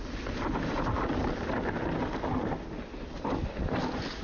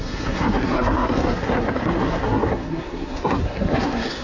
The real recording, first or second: first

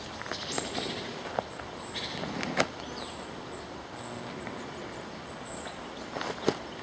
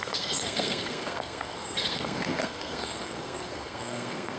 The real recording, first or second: first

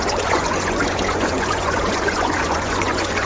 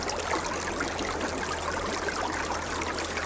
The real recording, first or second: second